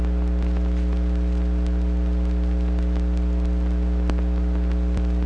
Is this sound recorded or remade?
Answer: recorded